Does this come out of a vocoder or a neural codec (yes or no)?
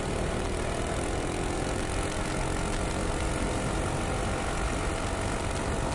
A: no